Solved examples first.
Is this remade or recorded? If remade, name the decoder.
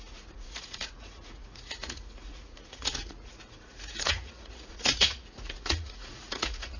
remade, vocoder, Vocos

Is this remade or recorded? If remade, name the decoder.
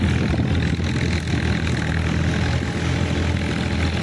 recorded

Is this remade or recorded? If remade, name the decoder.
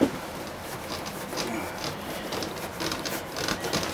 recorded